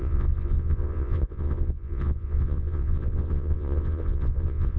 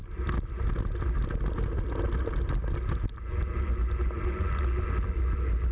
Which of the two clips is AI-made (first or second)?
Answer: first